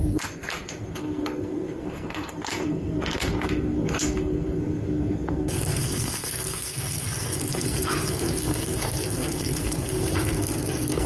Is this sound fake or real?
fake